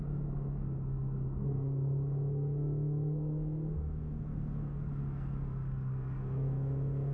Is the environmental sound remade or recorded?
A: remade